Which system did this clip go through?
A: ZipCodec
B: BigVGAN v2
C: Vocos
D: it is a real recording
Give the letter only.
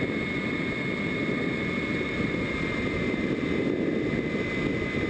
D